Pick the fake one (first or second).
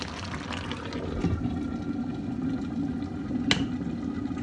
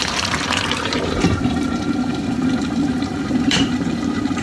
second